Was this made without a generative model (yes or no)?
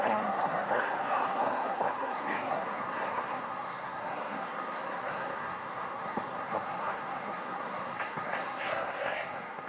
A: no